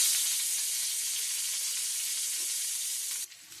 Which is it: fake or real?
real